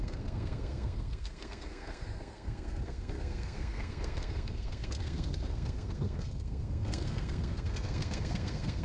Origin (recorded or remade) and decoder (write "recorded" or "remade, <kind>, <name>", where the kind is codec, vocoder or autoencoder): remade, codec, SNAC